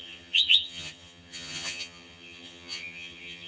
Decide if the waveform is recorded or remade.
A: remade